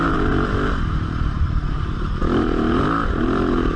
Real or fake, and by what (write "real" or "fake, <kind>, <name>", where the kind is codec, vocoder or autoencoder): fake, vocoder, BigVGAN v2